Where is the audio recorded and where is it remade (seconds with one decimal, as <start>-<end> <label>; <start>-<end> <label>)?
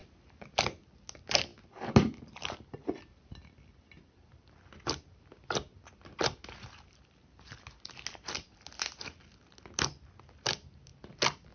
0.0-11.5 recorded